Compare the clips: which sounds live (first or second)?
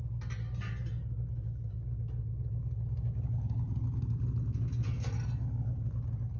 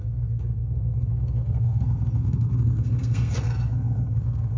first